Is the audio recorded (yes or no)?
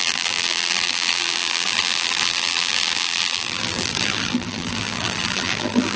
no